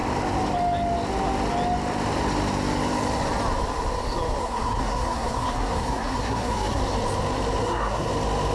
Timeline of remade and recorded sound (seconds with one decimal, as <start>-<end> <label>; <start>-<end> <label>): 0.0-4.4 recorded; 4.4-6.8 remade; 6.8-7.6 recorded; 7.6-8.1 remade; 8.1-8.5 recorded